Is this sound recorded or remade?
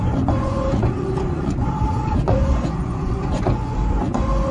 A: remade